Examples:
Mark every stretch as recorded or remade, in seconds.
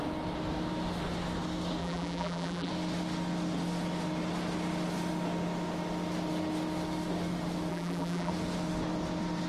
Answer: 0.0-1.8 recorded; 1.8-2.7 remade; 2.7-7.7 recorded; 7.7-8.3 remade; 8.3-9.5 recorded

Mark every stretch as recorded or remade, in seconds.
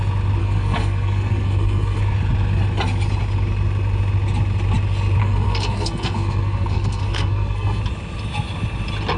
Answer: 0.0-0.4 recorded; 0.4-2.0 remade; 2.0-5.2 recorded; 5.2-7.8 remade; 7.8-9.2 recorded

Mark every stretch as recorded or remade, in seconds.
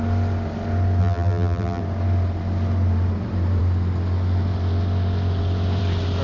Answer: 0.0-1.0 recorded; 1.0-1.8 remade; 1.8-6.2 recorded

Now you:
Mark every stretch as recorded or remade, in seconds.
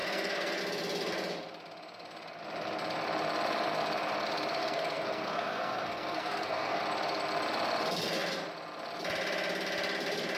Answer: 0.0-0.6 remade; 0.6-4.6 recorded; 4.6-6.8 remade; 6.8-10.4 recorded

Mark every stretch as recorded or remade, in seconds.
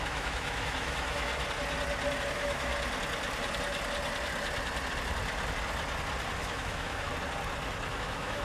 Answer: 0.0-1.3 remade; 1.3-2.3 recorded; 2.3-2.7 remade; 2.7-6.4 recorded; 6.4-7.1 remade; 7.1-7.9 recorded; 7.9-8.4 remade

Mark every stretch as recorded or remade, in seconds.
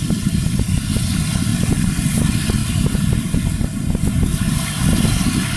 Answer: 0.0-5.6 recorded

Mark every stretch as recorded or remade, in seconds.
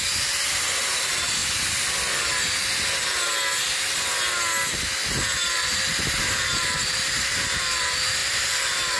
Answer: 0.0-1.4 remade; 1.4-5.2 recorded; 5.2-9.0 remade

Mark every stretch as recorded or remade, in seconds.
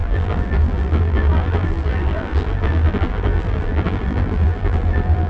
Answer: 0.0-5.3 remade